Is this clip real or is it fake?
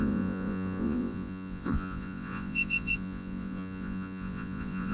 fake